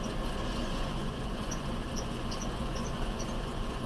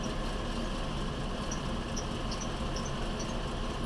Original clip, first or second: second